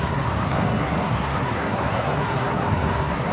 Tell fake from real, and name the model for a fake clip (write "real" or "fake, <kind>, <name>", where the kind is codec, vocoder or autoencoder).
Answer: fake, codec, SNAC